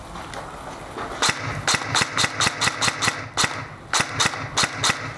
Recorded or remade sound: recorded